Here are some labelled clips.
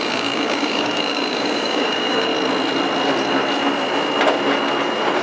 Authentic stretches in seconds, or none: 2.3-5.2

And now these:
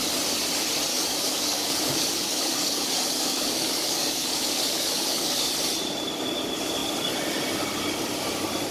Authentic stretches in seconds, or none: 0.0-0.9; 5.5-8.7